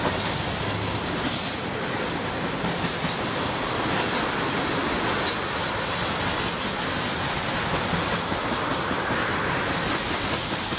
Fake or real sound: real